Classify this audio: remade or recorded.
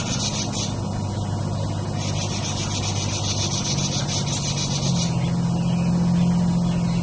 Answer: recorded